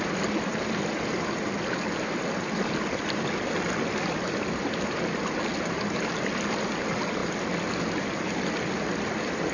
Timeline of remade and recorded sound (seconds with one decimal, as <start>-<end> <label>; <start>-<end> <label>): 0.0-9.5 recorded